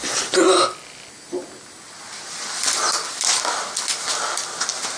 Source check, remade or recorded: recorded